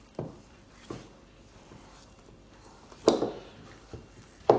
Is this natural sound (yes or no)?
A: yes